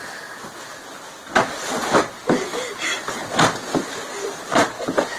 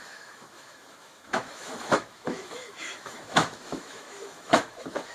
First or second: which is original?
first